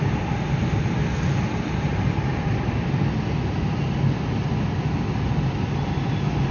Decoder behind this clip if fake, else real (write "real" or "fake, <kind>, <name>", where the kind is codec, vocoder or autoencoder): real